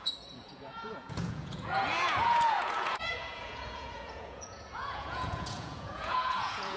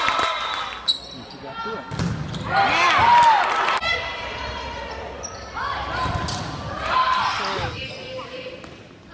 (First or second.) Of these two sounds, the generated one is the first